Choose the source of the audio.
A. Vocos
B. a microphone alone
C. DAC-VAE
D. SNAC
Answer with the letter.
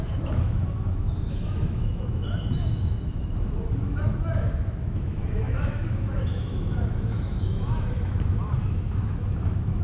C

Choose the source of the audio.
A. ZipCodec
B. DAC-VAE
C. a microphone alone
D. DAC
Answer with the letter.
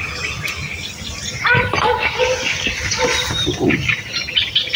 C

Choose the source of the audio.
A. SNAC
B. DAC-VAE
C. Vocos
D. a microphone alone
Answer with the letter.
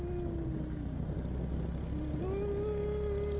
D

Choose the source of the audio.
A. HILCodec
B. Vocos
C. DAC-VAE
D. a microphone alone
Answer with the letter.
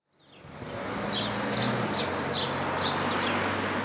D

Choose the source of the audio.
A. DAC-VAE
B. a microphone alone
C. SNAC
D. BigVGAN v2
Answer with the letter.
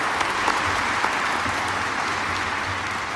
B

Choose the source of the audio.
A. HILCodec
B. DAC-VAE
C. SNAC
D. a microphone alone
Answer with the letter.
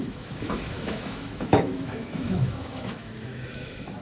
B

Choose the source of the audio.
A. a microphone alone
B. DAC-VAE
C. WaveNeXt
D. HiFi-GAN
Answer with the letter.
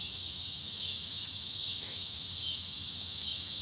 B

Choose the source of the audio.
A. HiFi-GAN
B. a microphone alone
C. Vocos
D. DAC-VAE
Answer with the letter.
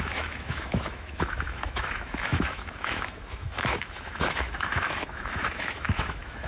D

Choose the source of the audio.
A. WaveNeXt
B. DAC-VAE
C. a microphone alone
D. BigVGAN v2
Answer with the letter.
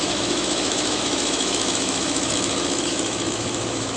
B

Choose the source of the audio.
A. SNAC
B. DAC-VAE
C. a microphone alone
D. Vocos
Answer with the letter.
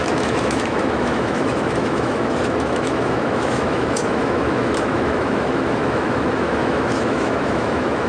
B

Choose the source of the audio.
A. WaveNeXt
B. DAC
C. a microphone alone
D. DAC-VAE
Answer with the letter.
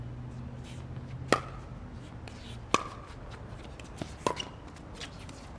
C